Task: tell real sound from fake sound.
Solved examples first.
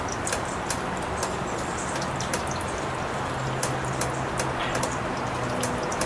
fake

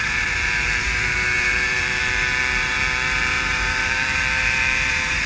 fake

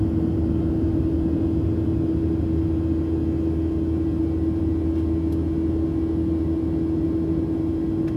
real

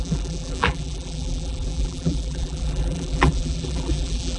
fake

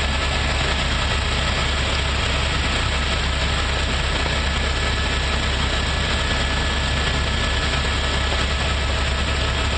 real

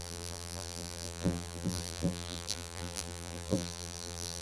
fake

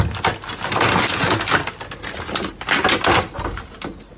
real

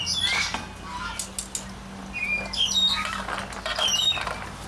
real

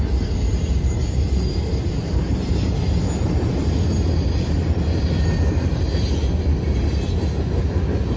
real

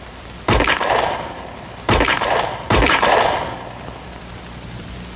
fake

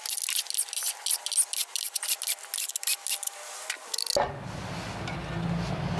real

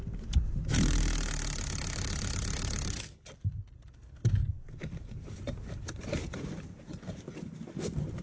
fake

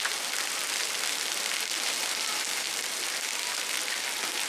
real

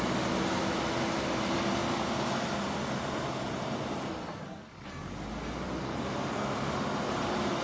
real